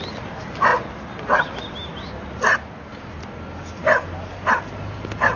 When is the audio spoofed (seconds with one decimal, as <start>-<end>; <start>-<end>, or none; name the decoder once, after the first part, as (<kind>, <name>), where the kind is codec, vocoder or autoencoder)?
none